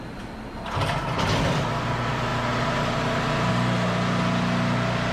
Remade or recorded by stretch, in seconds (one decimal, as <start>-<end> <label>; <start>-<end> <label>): 0.0-5.1 recorded